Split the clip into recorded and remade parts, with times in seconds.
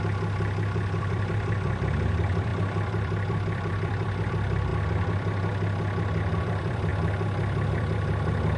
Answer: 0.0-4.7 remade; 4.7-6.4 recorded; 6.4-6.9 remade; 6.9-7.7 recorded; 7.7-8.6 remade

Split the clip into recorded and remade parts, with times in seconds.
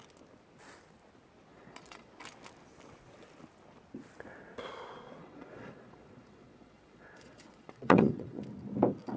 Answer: 0.0-1.5 recorded; 1.5-2.1 remade; 2.1-5.2 recorded; 5.2-8.4 remade; 8.4-9.2 recorded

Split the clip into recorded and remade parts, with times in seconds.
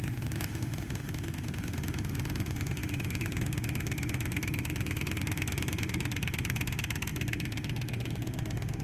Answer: 0.0-8.8 remade